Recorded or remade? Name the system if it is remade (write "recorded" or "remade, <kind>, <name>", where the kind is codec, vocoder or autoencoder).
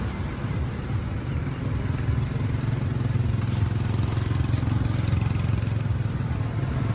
recorded